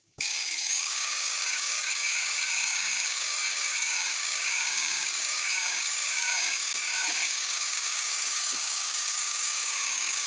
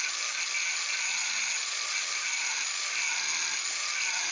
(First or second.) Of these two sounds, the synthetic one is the first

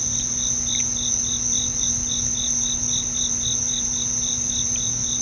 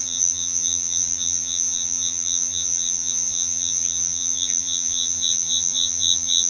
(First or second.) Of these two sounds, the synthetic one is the second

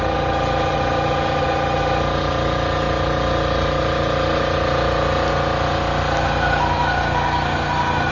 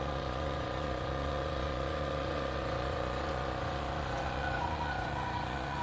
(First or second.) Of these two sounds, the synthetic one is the second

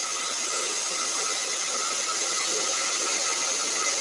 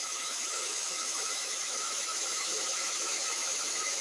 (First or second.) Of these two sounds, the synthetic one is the second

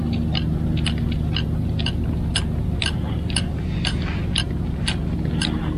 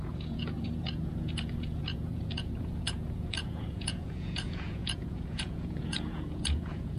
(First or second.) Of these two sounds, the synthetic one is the second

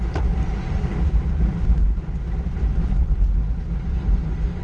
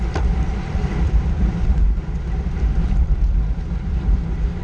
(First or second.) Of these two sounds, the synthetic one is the second